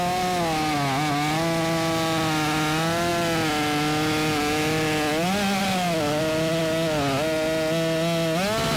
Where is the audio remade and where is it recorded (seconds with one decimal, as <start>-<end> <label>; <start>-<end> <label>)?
0.0-8.8 recorded